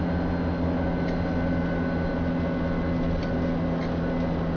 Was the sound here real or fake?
real